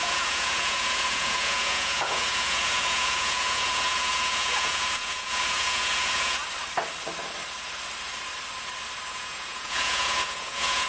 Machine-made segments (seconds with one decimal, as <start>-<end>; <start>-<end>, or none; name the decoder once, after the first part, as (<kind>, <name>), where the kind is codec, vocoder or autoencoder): 0.0-6.4 (vocoder, Vocos); 9.1-10.9